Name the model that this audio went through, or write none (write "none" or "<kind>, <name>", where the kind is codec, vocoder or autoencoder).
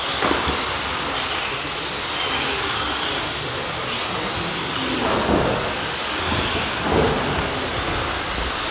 none